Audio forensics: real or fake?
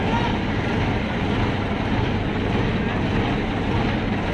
real